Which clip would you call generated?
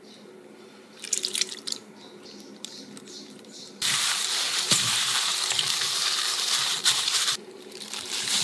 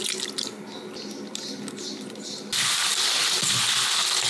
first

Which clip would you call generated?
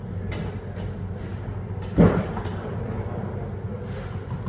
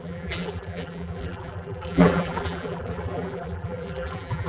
second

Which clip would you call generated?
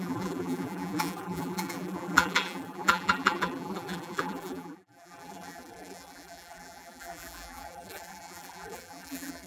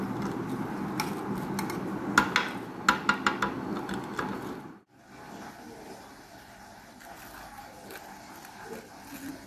first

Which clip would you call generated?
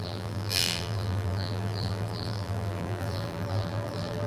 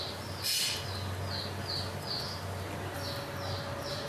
first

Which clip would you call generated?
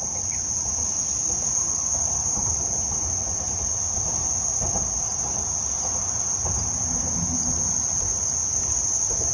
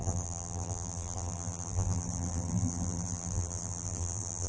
second